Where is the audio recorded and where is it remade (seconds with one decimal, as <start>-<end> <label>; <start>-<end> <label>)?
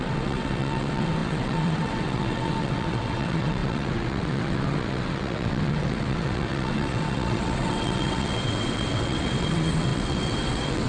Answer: 0.0-10.9 remade